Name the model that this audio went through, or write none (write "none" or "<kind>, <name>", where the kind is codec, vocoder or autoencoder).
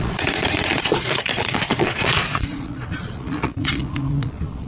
vocoder, Vocos